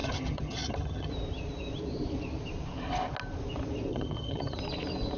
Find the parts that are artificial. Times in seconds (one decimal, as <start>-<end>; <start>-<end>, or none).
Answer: 0.0-1.1; 3.9-4.6